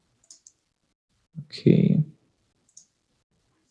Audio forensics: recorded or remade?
recorded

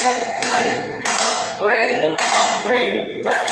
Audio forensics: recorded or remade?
remade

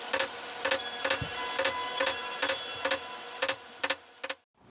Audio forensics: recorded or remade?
recorded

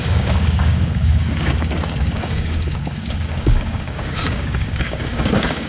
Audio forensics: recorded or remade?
remade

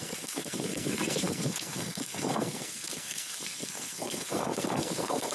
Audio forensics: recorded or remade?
remade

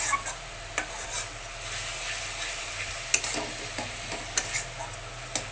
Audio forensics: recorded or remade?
recorded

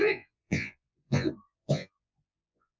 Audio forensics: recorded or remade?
remade